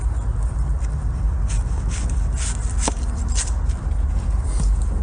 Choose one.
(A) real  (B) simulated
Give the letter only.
A